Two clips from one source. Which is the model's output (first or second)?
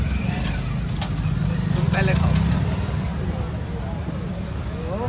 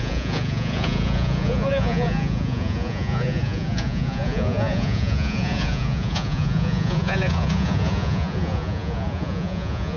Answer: second